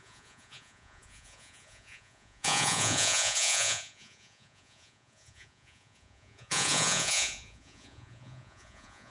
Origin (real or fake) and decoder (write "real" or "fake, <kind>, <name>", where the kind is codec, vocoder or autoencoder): fake, vocoder, Vocos